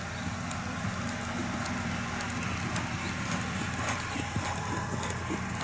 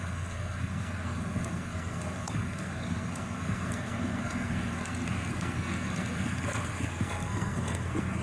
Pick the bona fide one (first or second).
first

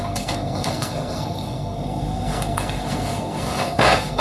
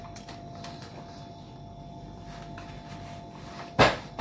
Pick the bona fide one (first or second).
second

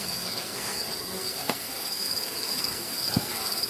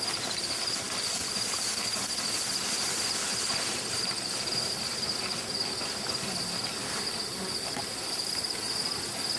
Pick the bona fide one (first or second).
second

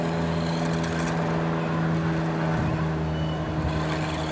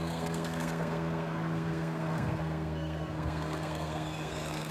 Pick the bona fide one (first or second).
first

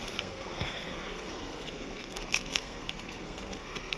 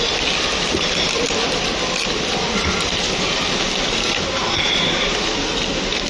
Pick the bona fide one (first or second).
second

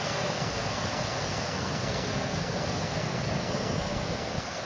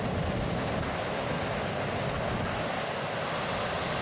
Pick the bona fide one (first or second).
second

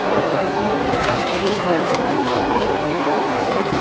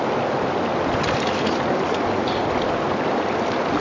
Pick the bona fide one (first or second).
second